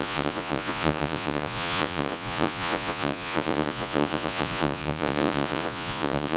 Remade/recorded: remade